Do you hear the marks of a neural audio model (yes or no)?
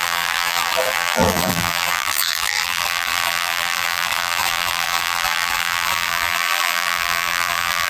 yes